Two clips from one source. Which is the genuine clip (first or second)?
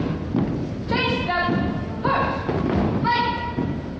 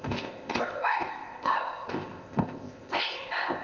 first